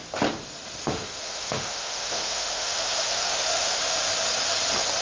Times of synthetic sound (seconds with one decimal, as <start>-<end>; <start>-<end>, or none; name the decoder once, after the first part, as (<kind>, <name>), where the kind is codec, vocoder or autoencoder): 0.8-3.8 (autoencoder, DAC-VAE)